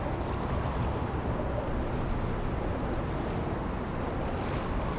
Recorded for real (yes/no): yes